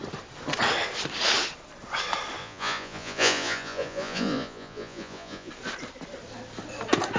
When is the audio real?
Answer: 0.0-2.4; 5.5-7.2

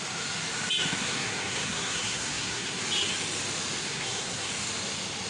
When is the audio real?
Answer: 0.0-1.0; 2.8-3.8; 4.5-5.3

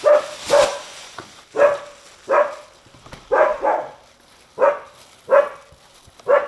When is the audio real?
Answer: 0.0-0.7; 1.4-6.5

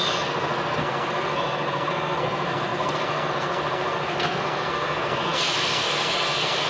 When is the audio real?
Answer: none

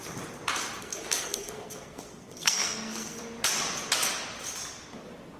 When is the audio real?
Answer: 0.0-0.8; 3.2-5.4

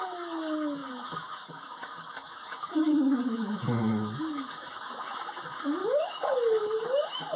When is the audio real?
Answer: none